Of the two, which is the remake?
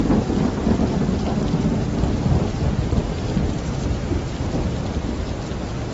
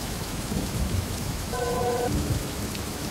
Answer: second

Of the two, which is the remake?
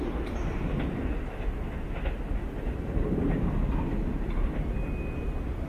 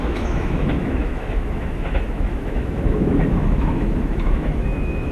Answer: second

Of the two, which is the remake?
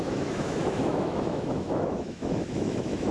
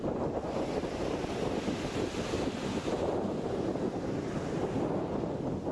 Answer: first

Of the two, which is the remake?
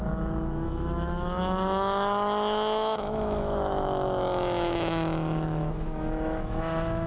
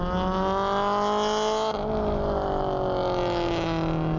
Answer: first